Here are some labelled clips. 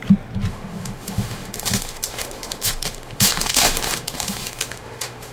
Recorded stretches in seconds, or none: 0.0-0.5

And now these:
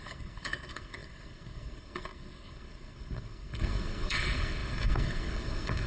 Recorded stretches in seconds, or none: none